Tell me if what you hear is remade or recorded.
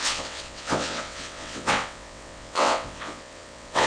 remade